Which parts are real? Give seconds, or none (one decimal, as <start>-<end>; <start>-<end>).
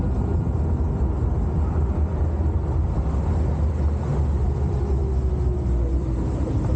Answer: 0.0-6.8